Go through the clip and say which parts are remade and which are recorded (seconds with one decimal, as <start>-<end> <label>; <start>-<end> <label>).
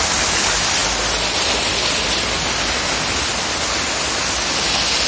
0.0-5.1 recorded